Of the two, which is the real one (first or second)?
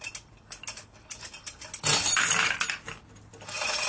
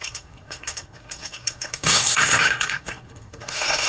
first